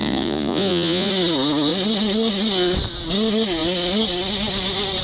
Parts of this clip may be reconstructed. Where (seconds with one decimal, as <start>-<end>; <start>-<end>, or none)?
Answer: 0.0-1.1